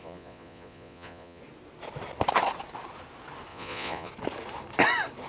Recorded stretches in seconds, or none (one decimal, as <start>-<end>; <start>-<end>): 1.4-3.5; 4.1-5.3